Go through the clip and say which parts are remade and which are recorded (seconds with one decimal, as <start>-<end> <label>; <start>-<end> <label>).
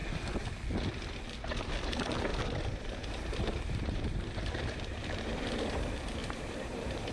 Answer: 0.0-2.3 recorded; 2.3-5.3 remade; 5.3-6.2 recorded; 6.2-7.1 remade